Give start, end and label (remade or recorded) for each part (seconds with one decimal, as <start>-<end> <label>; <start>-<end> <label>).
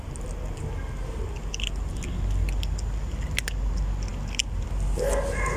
0.0-4.1 recorded; 4.1-4.6 remade; 4.6-5.6 recorded